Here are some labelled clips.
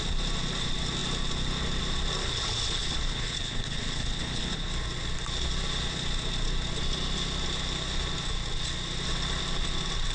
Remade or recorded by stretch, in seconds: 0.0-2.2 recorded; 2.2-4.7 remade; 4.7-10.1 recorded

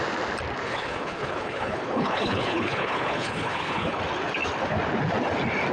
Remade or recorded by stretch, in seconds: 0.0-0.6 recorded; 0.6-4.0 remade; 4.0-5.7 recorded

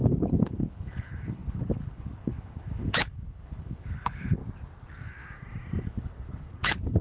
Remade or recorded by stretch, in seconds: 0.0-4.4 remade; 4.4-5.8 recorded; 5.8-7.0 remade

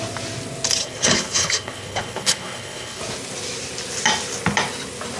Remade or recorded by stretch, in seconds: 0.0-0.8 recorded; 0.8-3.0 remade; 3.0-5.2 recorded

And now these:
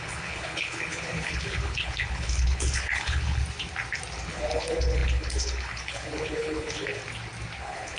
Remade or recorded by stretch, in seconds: 0.0-3.4 remade; 3.4-4.3 recorded; 4.3-7.0 remade; 7.0-7.6 recorded; 7.6-8.0 remade